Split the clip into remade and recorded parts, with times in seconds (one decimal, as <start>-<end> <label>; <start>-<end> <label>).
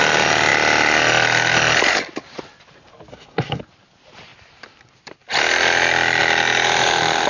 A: 0.0-3.1 recorded; 3.1-3.6 remade; 3.6-7.3 recorded